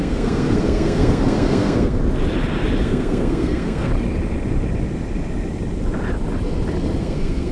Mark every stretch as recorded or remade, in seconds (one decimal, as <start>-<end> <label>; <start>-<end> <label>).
0.0-2.0 remade; 2.0-2.8 recorded; 2.8-3.9 remade; 3.9-7.0 recorded; 7.0-7.5 remade